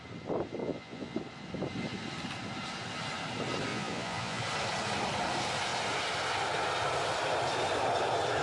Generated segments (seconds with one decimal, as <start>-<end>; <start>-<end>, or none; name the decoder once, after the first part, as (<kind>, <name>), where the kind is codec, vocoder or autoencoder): 0.6-1.2 (vocoder, Vocos); 3.7-4.4